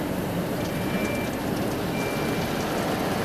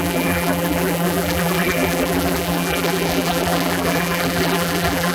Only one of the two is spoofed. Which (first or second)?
second